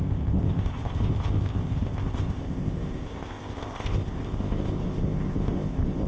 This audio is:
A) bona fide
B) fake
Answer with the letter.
B